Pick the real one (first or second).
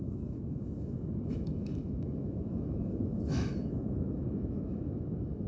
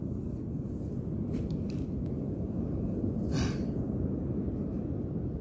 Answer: second